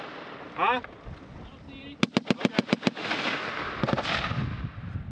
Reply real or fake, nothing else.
real